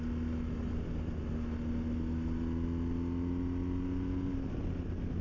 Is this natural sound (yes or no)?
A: yes